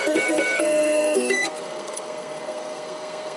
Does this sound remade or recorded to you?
remade